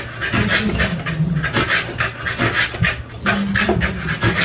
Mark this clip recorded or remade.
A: recorded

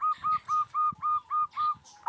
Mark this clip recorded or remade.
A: recorded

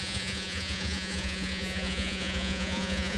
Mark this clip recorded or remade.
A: remade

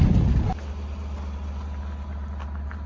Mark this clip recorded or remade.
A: recorded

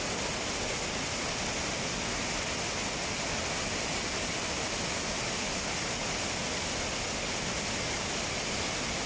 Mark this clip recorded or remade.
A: recorded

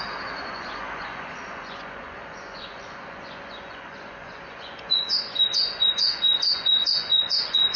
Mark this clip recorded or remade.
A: remade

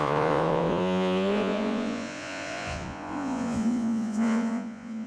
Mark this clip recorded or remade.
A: remade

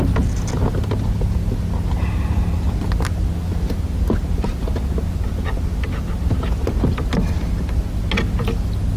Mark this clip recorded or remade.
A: recorded